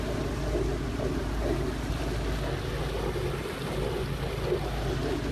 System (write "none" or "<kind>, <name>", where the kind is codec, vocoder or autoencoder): none